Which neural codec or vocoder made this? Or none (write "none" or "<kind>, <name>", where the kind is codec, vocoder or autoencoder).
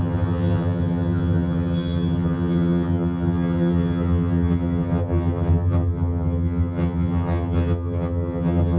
vocoder, HiFi-GAN